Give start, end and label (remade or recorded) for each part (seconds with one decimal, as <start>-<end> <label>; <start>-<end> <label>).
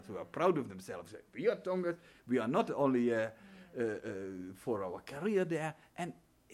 0.0-1.6 recorded; 1.6-2.2 remade; 2.2-4.4 recorded; 4.4-6.5 remade